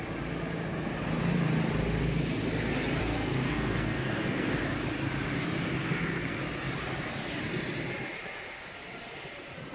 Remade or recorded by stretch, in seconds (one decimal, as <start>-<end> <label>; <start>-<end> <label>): 0.0-3.0 recorded; 3.0-4.6 remade; 4.6-5.8 recorded; 5.8-6.4 remade; 6.4-9.7 recorded